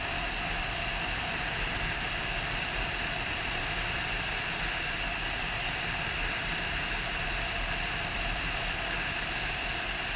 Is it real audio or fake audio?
real